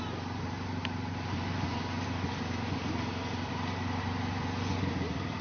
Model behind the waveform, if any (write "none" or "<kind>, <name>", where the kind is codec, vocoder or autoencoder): none